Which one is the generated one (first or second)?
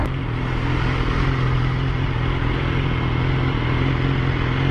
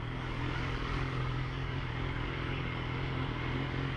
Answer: second